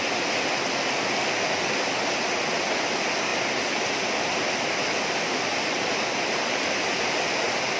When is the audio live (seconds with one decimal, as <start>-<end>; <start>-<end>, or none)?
0.0-7.8